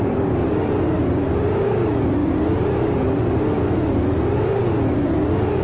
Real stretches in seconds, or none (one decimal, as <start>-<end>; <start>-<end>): 0.0-5.6